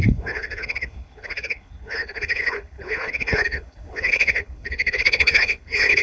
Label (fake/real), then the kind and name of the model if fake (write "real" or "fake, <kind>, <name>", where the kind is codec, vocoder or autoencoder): fake, codec, HILCodec